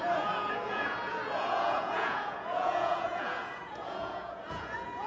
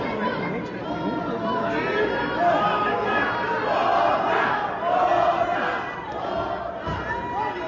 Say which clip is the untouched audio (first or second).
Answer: second